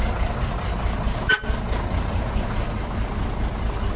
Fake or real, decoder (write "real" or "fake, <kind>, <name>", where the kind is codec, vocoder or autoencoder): real